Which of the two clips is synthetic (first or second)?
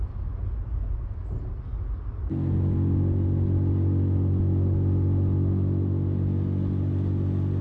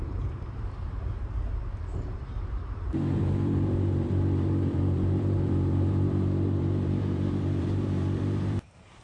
second